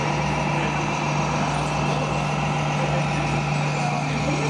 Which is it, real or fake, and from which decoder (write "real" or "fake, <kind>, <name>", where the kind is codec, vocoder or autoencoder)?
real